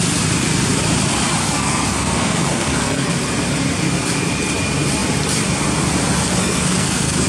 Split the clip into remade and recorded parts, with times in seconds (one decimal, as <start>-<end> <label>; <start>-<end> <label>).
0.0-1.4 recorded; 1.4-3.1 remade; 3.1-6.4 recorded; 6.4-7.3 remade